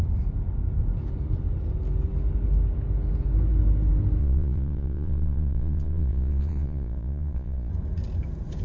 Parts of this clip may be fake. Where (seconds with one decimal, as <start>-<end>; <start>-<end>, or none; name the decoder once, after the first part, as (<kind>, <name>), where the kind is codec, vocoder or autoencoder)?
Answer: 4.2-7.7 (vocoder, Vocos)